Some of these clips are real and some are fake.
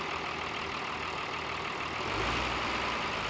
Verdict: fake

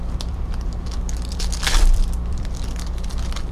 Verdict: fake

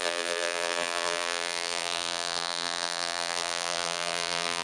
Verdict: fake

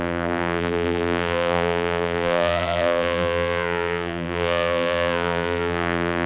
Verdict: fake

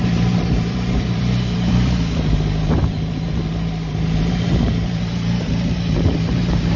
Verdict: fake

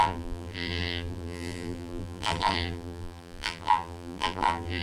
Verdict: fake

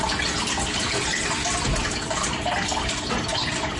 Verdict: real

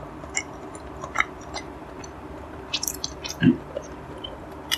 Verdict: fake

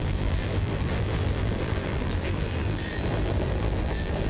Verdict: fake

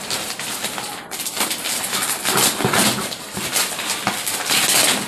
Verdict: real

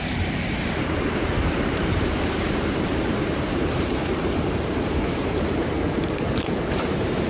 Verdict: fake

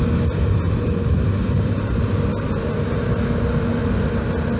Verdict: fake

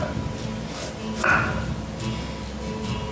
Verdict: real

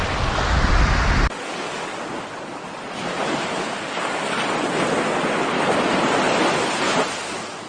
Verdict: real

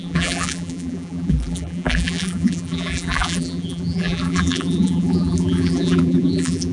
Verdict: fake